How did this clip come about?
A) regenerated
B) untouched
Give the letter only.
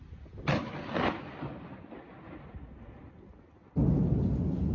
B